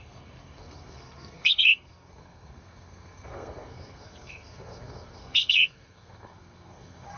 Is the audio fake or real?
fake